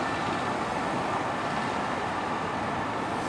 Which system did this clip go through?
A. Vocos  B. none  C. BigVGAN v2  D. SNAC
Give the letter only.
C